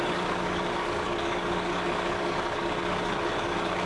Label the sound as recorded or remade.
remade